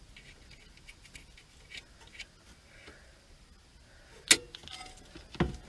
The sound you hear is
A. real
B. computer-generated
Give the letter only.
A